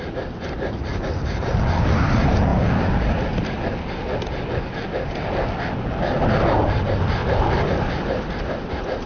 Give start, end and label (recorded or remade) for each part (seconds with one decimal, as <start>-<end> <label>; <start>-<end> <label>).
0.0-2.5 remade; 2.5-6.6 recorded; 6.6-7.2 remade; 7.2-8.7 recorded; 8.7-9.1 remade